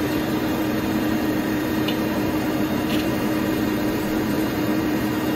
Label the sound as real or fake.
fake